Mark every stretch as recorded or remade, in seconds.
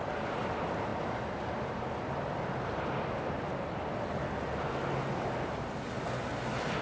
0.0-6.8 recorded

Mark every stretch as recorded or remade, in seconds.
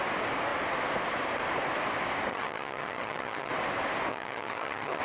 0.0-2.3 recorded; 2.3-3.5 remade; 3.5-4.1 recorded; 4.1-5.0 remade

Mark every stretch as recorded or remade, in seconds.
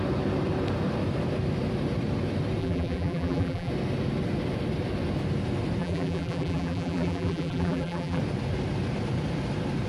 0.0-2.6 recorded; 2.6-3.7 remade; 3.7-5.8 recorded; 5.8-8.2 remade; 8.2-9.9 recorded